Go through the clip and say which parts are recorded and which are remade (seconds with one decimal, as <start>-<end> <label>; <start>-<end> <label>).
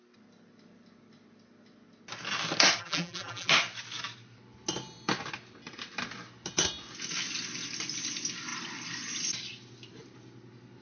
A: 0.0-2.8 recorded; 2.8-3.5 remade; 3.5-10.8 recorded